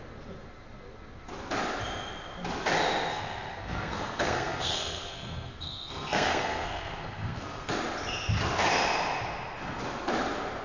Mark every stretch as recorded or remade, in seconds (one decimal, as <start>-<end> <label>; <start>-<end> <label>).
0.0-3.1 recorded; 3.1-7.7 remade; 7.7-10.6 recorded